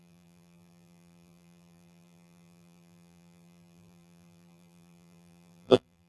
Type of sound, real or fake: fake